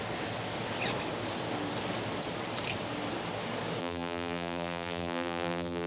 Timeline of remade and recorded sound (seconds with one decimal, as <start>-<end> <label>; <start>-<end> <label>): 0.0-3.8 recorded; 3.8-5.9 remade